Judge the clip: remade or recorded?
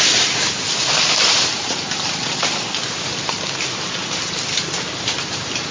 remade